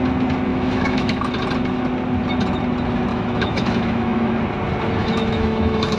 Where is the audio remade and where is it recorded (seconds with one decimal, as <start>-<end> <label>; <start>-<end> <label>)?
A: 0.0-0.5 recorded; 0.5-1.3 remade; 1.3-3.1 recorded; 3.1-4.4 remade; 4.4-5.0 recorded; 5.0-6.0 remade